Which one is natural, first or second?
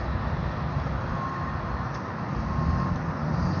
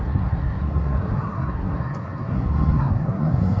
first